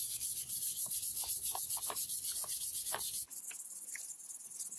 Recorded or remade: recorded